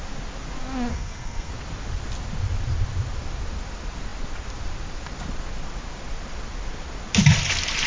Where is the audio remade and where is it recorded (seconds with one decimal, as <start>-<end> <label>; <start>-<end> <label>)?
0.0-0.9 recorded; 0.9-1.5 remade; 1.5-7.9 recorded

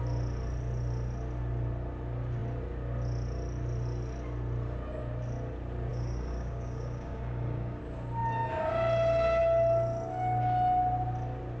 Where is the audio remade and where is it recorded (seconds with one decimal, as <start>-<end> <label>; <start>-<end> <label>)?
0.0-5.9 recorded; 5.9-7.8 remade; 7.8-11.6 recorded

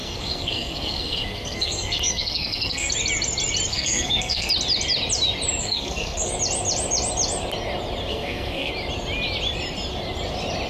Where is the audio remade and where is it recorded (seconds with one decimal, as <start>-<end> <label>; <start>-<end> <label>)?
0.0-2.9 remade; 2.9-3.7 recorded; 3.7-4.5 remade; 4.5-5.6 recorded; 5.6-6.3 remade; 6.3-8.1 recorded; 8.1-8.7 remade; 8.7-10.7 recorded

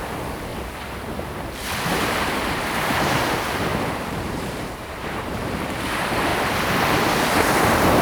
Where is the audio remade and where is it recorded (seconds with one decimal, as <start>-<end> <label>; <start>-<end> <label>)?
0.0-0.5 remade; 0.5-1.8 recorded; 1.8-6.3 remade; 6.3-7.2 recorded; 7.2-8.0 remade

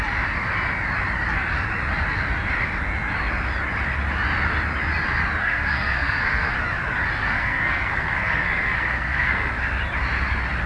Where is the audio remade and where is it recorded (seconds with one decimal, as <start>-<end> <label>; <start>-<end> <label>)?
0.0-5.4 recorded; 5.4-6.5 remade; 6.5-7.2 recorded; 7.2-9.5 remade; 9.5-10.7 recorded

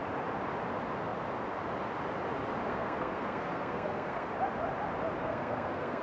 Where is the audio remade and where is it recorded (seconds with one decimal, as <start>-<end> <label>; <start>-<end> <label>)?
0.0-2.7 recorded; 2.7-4.3 remade; 4.3-5.2 recorded; 5.2-6.0 remade

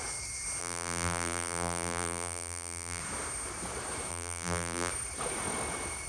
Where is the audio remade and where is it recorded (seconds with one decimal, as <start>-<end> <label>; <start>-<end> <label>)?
0.0-0.6 recorded; 0.6-3.0 remade; 3.0-4.1 recorded; 4.1-4.9 remade; 4.9-6.1 recorded

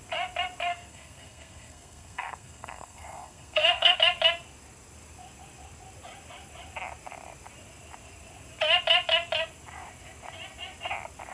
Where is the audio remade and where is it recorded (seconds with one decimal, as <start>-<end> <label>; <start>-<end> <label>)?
0.0-0.7 recorded; 0.7-4.0 remade; 4.0-11.3 recorded